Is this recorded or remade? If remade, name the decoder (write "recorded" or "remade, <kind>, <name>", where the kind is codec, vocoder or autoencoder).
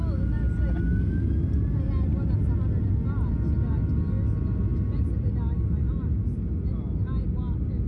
recorded